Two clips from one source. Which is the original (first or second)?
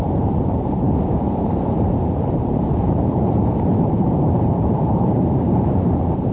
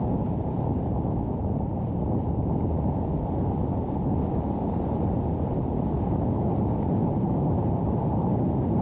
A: second